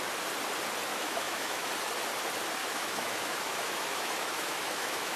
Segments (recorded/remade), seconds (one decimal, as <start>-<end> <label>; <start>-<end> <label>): 0.0-0.9 recorded; 0.9-1.7 remade; 1.7-2.6 recorded; 2.6-5.2 remade